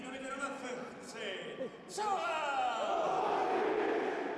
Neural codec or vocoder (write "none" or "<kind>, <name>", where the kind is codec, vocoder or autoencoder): none